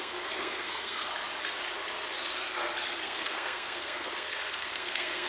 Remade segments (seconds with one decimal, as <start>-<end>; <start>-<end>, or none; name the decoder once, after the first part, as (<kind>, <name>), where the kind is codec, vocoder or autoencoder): 0.0-1.1 (codec, SNAC); 3.0-5.3

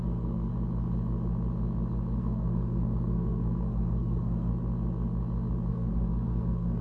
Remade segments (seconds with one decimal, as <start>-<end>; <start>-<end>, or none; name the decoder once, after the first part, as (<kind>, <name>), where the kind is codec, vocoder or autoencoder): 0.0-0.5 (codec, SNAC); 2.2-4.5; 5.7-6.8